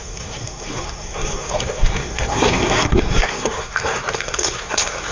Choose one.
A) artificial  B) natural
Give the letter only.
A